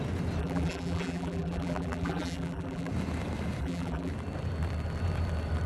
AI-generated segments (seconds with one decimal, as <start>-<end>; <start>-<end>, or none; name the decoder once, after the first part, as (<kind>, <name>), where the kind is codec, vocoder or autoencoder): 0.4-2.9 (vocoder, BigVGAN v2); 3.6-4.1